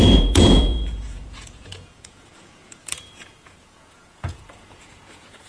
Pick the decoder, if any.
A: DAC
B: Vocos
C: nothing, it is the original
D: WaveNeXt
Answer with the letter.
B